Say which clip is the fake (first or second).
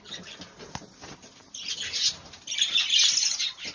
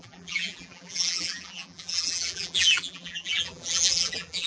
second